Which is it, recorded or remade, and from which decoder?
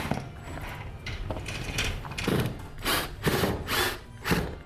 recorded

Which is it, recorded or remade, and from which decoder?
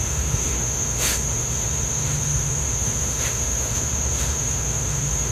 remade, autoencoder, DAC-VAE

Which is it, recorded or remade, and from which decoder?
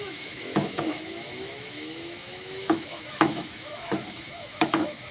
remade, autoencoder, DAC-VAE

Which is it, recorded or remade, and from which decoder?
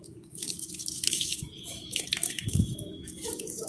remade, autoencoder, DAC-VAE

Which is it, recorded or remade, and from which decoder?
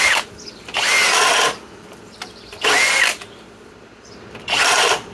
recorded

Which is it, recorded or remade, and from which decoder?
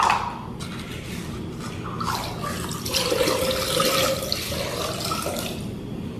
recorded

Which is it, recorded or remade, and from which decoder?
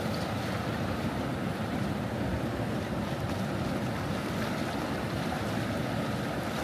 recorded